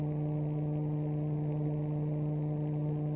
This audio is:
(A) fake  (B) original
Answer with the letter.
B